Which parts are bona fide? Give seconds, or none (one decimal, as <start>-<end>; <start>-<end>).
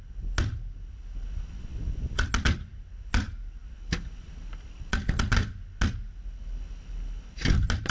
0.0-7.9